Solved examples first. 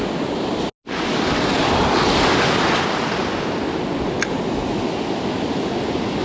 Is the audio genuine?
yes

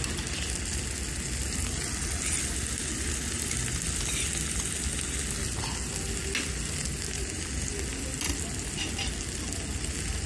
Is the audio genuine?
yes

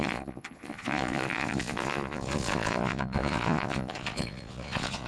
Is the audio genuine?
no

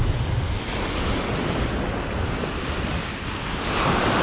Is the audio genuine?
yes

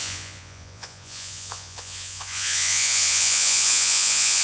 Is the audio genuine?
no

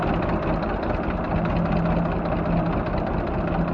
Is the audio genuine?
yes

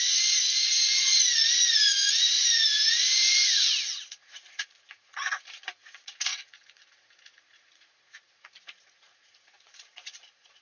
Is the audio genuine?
no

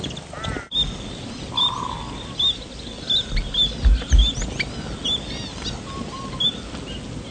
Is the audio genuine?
yes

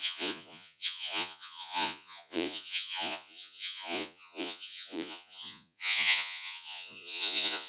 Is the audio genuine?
no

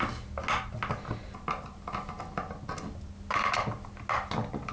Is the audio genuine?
yes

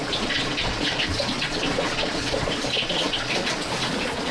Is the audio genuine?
no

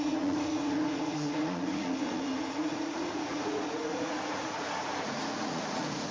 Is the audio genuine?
no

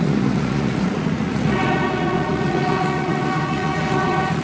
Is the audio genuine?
no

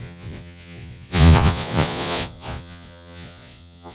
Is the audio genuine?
no